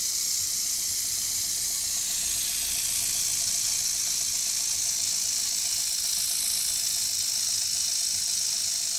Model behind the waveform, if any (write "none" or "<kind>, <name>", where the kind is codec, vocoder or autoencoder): none